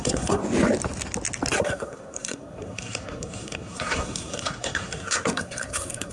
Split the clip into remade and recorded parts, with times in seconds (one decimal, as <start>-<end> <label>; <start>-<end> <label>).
0.0-0.4 remade; 0.4-1.6 recorded; 1.6-6.1 remade